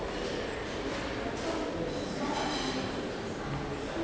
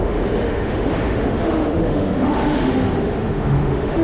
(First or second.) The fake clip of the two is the second